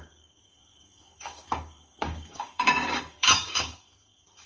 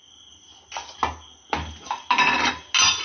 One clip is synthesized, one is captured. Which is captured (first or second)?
second